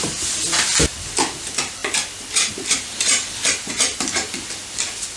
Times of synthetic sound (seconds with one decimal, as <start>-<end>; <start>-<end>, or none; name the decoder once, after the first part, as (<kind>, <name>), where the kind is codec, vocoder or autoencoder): 0.0-1.8 (vocoder, BigVGAN v2); 2.5-5.2